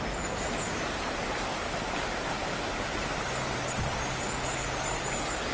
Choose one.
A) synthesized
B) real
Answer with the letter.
B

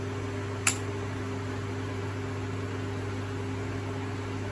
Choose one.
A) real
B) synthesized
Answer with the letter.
A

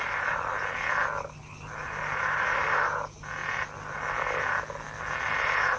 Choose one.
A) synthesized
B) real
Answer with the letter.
B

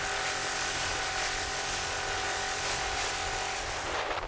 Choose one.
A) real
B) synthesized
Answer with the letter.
A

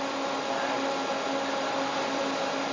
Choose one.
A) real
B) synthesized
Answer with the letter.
A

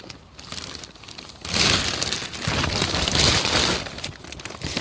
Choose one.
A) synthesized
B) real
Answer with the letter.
B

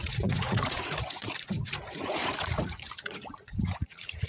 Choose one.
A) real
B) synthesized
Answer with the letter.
B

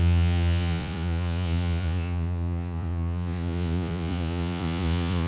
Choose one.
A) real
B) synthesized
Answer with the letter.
B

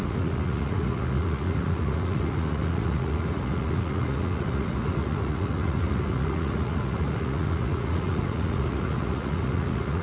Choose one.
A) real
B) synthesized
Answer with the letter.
B